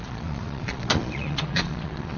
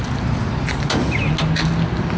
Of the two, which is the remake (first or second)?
first